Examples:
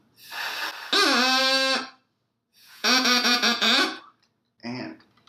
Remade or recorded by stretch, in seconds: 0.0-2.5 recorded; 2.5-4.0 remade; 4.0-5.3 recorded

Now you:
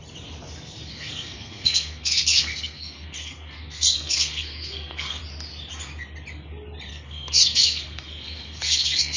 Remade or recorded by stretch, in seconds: 0.0-0.9 recorded; 0.9-5.2 remade; 5.2-6.9 recorded; 6.9-9.2 remade